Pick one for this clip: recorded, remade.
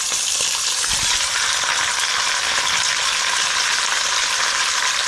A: recorded